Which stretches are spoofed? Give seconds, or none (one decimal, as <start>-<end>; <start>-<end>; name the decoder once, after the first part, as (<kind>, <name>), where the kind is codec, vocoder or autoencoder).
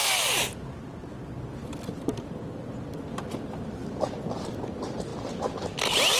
0.5-1.1 (vocoder, BigVGAN v2); 1.6-4.6; 5.1-6.2